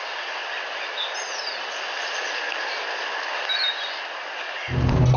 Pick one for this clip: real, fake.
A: real